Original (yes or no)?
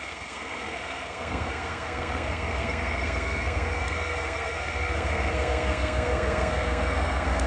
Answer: no